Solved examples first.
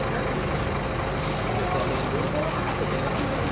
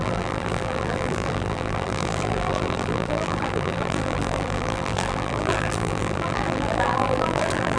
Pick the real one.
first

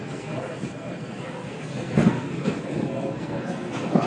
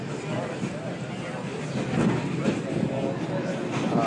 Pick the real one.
second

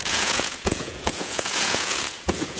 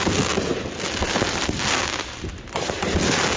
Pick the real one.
second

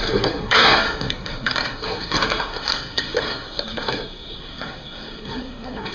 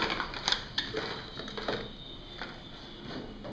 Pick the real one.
second